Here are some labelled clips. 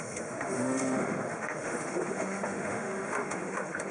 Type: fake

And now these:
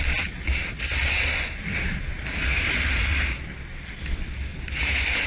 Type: real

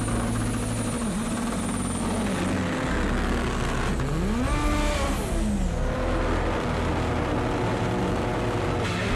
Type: real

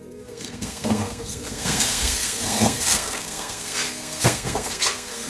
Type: fake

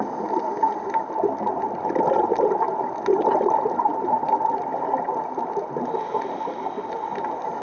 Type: real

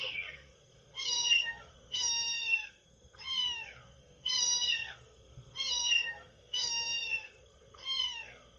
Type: fake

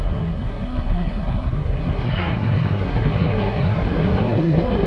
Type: fake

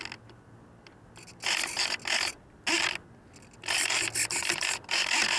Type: real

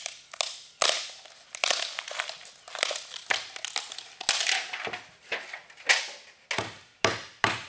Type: real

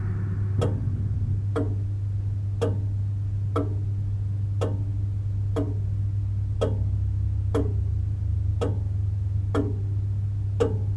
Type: real